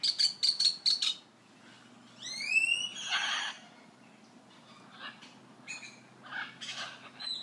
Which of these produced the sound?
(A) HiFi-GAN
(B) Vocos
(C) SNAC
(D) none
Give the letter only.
D